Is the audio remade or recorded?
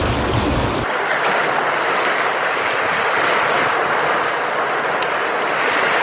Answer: recorded